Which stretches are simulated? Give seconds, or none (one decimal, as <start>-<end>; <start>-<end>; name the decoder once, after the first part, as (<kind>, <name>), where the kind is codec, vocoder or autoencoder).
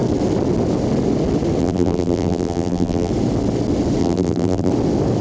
1.6-3.1 (vocoder, BigVGAN v2); 4.0-4.7